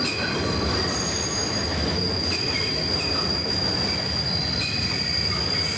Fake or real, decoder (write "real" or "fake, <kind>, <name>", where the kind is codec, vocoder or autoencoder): real